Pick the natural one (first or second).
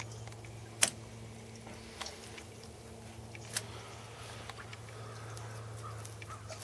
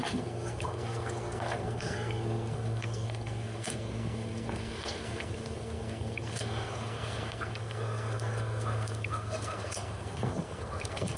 first